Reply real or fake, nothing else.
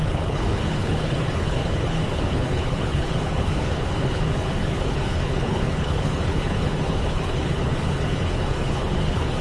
fake